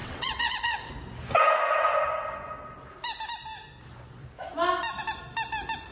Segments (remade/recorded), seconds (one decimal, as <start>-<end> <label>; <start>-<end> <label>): 0.0-0.9 remade; 0.9-5.9 recorded